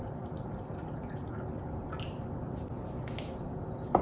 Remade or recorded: recorded